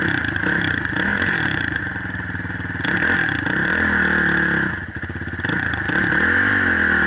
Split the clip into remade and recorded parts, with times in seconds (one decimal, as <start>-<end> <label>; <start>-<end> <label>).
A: 0.0-1.1 recorded; 1.1-1.8 remade; 1.8-7.1 recorded